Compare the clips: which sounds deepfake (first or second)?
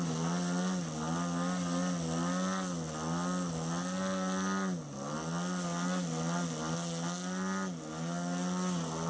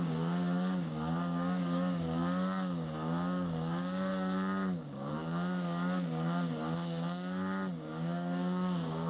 second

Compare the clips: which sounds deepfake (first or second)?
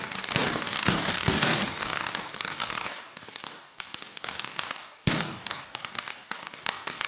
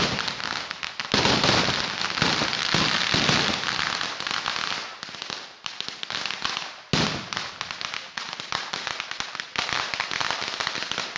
first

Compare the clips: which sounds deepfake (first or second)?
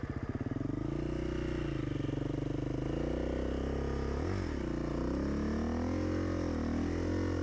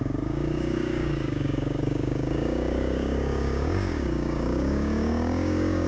second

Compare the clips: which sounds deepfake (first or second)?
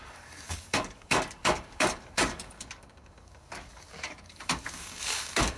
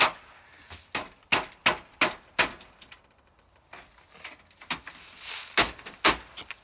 first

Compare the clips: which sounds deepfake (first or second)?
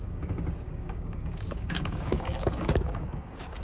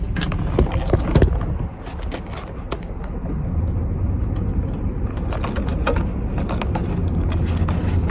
first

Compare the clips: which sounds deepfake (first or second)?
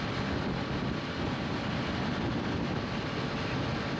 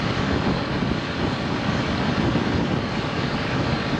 second